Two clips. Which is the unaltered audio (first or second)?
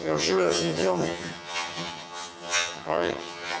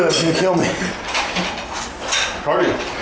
second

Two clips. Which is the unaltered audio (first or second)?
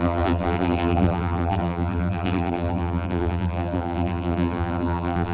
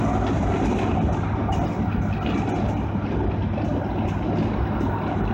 second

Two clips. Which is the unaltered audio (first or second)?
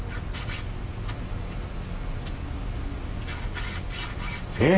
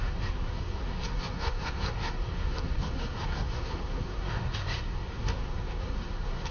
first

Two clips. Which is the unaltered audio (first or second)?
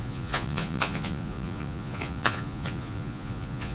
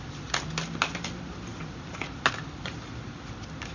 second